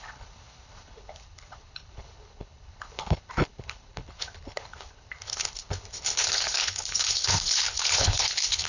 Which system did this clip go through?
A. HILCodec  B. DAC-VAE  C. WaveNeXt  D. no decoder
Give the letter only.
A